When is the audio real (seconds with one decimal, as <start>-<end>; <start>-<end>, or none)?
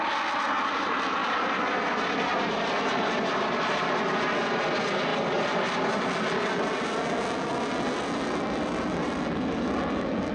0.0-10.3